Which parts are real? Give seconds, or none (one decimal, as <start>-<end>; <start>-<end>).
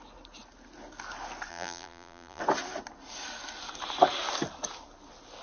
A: 0.0-1.5; 2.4-5.4